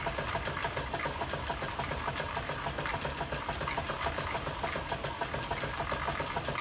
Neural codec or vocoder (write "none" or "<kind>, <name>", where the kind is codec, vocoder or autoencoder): none